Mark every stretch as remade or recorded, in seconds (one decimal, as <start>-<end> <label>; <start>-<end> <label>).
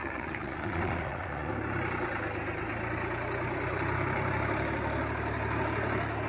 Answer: 0.0-1.5 remade; 1.5-6.3 recorded